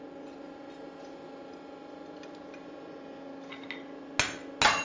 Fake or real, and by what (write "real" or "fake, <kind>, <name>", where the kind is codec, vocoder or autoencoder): real